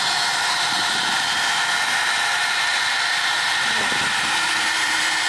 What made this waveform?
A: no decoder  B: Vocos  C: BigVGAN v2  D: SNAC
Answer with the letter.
C